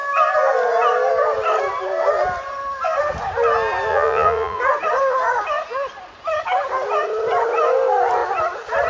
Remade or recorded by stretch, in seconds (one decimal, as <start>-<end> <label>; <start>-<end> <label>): 0.0-3.9 recorded; 3.9-4.6 remade; 4.6-8.9 recorded